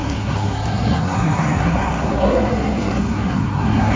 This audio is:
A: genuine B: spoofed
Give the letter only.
B